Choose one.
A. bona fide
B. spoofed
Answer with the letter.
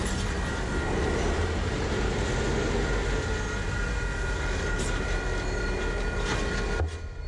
A